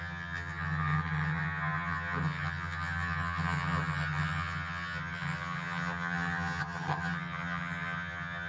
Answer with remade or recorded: remade